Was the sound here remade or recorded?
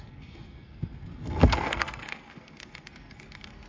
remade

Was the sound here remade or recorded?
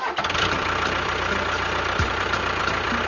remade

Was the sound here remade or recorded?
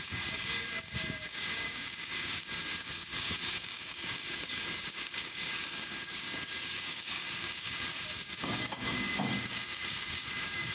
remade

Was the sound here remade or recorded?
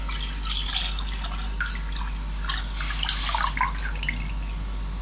recorded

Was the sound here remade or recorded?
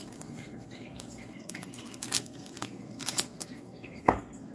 remade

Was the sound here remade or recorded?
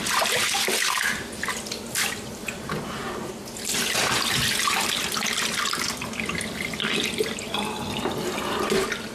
recorded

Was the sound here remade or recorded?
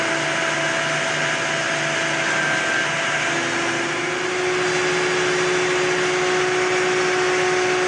recorded